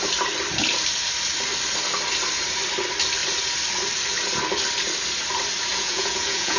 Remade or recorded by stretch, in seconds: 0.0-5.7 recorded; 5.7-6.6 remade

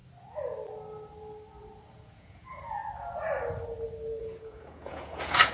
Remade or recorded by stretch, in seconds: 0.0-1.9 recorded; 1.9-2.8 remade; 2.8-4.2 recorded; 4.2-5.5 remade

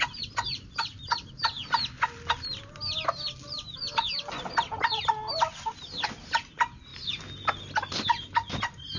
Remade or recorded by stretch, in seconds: 0.0-9.0 recorded

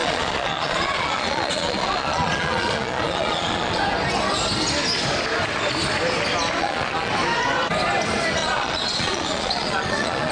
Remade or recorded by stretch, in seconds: 0.0-3.8 remade; 3.8-6.6 recorded; 6.6-7.1 remade; 7.1-8.4 recorded; 8.4-10.3 remade

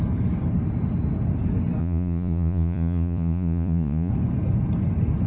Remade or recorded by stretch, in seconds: 0.0-1.8 recorded; 1.8-4.1 remade; 4.1-5.3 recorded

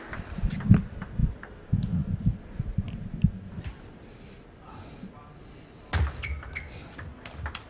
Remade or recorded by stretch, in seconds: 0.0-7.7 recorded

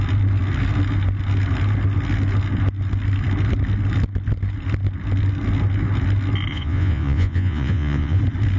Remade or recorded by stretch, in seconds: 0.0-6.5 recorded; 6.5-8.2 remade; 8.2-8.6 recorded

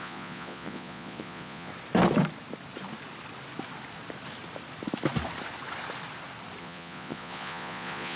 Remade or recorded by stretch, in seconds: 0.0-1.7 remade; 1.7-6.6 recorded; 6.6-8.2 remade